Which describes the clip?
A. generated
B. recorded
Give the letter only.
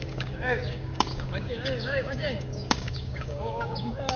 A